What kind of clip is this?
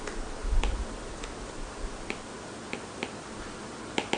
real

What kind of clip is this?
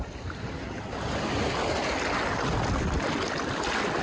real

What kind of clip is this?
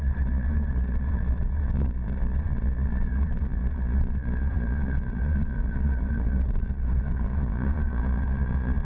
fake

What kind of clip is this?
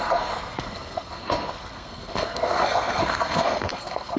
fake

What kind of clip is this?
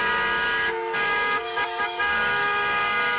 fake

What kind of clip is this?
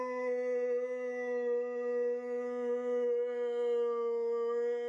real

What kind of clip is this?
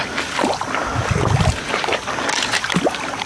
real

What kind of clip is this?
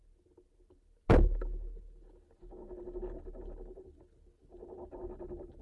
real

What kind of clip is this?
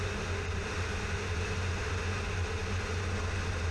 real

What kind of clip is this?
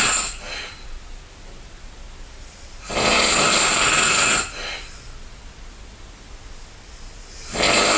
real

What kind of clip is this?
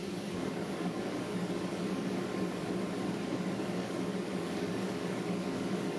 fake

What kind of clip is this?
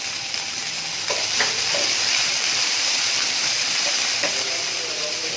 fake